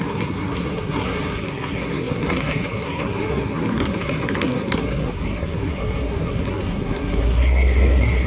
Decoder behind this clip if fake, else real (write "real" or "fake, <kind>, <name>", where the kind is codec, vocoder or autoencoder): fake, codec, SNAC